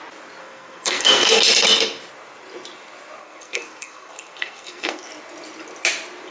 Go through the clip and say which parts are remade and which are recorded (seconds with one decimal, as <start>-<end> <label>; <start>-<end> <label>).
0.0-0.4 recorded; 0.4-1.4 remade; 1.4-3.2 recorded; 3.2-5.1 remade; 5.1-6.3 recorded